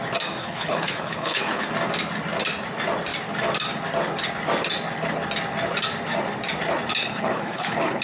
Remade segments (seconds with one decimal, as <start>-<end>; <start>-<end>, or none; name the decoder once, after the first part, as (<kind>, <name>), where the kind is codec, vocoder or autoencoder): 0.4-1.6 (codec, HILCodec); 7.0-8.0